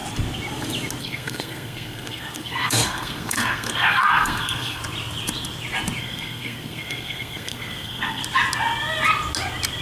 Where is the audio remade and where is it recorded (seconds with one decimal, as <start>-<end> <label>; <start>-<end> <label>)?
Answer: 0.0-1.0 recorded; 1.0-4.8 remade; 4.8-6.0 recorded; 6.0-8.2 remade; 8.2-9.8 recorded